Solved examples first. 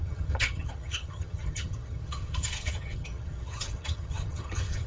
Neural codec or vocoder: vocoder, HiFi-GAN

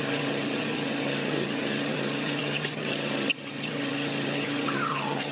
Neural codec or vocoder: vocoder, HiFi-GAN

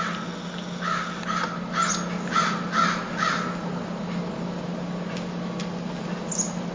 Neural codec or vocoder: none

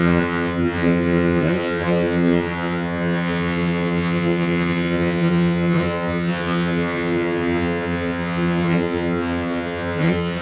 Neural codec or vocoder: vocoder, HiFi-GAN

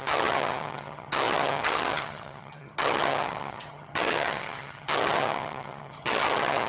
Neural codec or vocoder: vocoder, HiFi-GAN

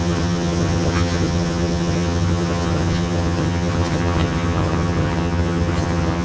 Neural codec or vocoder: vocoder, HiFi-GAN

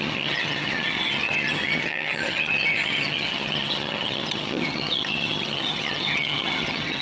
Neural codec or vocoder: vocoder, HiFi-GAN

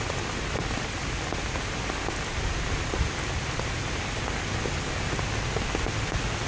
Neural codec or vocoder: none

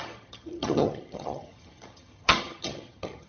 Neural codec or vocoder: vocoder, HiFi-GAN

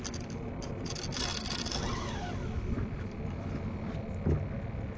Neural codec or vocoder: none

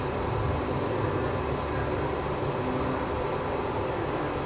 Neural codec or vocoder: none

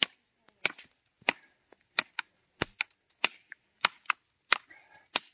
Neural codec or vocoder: none